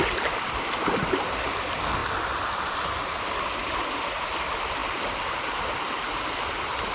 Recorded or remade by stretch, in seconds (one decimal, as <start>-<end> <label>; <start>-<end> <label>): 0.0-6.9 recorded